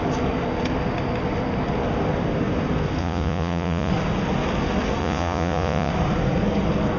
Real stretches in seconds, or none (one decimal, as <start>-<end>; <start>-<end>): 0.0-3.0; 3.9-5.0; 5.9-7.0